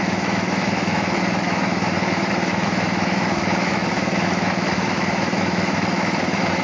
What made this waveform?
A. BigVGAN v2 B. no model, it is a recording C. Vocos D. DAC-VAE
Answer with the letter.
D